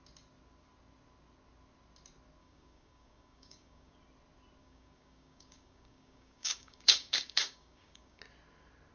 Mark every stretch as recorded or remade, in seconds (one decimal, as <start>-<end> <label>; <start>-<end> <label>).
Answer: 0.0-2.4 recorded; 2.4-3.9 remade; 3.9-4.6 recorded; 4.6-8.2 remade; 8.2-8.9 recorded